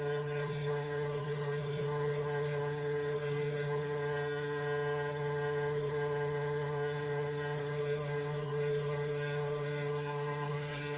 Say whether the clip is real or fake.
fake